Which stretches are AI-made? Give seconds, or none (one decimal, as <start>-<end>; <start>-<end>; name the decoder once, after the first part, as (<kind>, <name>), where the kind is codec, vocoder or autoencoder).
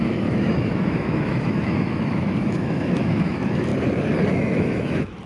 0.0-3.7 (autoencoder, DAC-VAE); 4.3-5.3